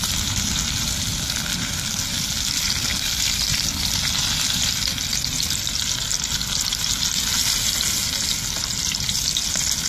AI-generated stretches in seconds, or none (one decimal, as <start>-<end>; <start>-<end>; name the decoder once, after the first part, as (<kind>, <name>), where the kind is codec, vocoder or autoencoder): none